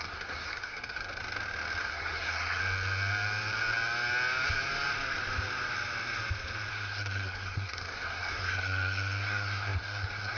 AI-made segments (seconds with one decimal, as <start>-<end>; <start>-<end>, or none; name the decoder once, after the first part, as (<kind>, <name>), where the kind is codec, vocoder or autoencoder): 0.0-1.2 (codec, SNAC); 1.8-2.6; 6.7-10.4

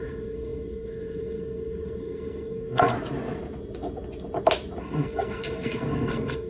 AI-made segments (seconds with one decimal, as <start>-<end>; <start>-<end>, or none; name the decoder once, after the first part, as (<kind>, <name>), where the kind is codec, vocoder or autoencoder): 0.0-2.9 (codec, SNAC); 4.8-6.5

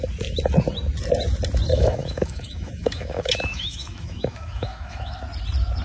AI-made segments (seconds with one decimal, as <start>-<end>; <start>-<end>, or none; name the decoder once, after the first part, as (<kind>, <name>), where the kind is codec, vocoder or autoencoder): 1.7-5.2 (autoencoder, DAC-VAE)

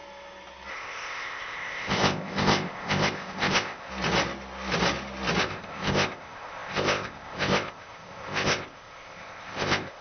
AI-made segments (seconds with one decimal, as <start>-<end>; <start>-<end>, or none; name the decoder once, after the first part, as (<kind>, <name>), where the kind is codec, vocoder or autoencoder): 0.7-3.9 (codec, ZipCodec); 5.4-10.0

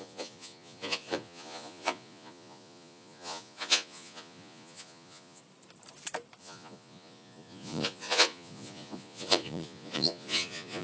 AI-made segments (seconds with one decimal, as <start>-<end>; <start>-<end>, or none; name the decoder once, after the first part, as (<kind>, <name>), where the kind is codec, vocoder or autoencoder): 0.0-5.4 (vocoder, Vocos); 6.4-10.8

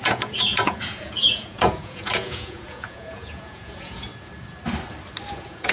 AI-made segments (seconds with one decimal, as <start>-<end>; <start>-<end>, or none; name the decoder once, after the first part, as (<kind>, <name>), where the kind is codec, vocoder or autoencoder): 0.0-4.1 (vocoder, Vocos); 5.3-5.7

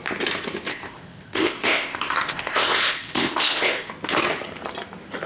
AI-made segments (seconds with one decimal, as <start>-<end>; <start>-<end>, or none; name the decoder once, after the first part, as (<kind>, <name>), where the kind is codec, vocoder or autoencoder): 0.7-3.9 (codec, ZipCodec)

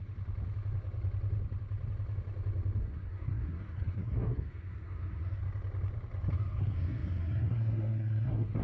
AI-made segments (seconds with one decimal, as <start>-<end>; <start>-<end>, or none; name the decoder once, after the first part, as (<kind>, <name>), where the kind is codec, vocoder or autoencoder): 2.8-5.4 (codec, SNAC); 6.6-8.6